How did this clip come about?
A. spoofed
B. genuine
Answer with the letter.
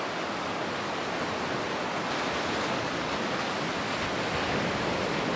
B